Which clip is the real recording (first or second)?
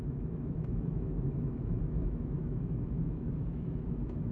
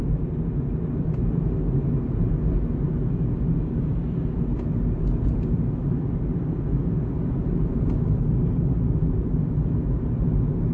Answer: second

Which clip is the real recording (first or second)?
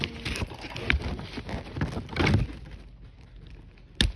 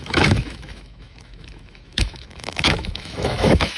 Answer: first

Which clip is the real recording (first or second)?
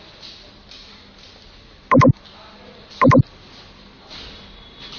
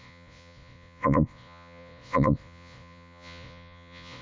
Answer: first